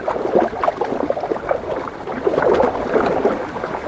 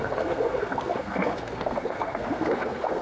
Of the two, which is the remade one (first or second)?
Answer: second